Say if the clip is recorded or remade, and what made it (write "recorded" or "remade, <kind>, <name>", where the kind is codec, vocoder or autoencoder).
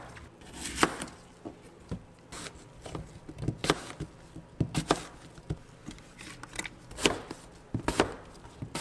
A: recorded